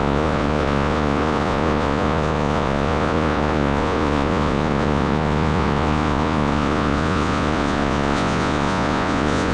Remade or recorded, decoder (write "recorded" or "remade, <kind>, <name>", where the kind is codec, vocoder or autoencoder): remade, vocoder, Vocos